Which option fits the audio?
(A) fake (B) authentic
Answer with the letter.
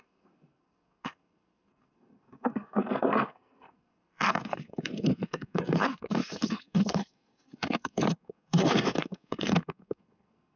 A